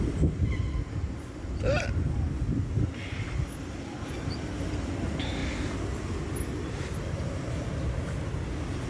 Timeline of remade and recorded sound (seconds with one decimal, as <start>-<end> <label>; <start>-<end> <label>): 0.0-8.9 recorded